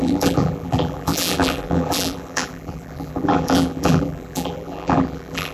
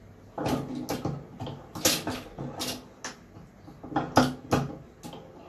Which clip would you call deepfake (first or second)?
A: first